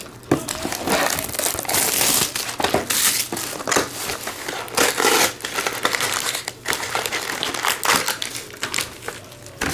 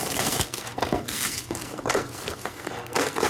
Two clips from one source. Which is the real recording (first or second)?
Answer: first